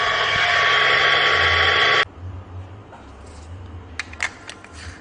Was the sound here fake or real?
real